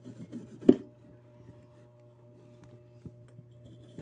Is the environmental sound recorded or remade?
recorded